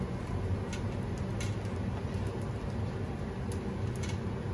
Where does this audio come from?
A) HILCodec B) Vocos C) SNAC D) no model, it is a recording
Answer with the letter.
D